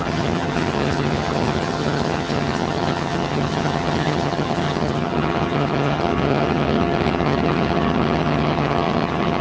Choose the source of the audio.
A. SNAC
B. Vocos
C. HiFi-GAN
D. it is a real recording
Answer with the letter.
C